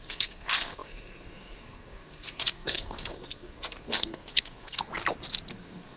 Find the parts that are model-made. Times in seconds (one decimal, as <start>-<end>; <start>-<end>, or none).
0.0-4.9; 5.5-6.0